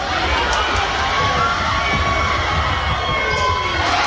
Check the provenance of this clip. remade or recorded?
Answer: recorded